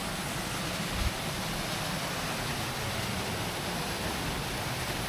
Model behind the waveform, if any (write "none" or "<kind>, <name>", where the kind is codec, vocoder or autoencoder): none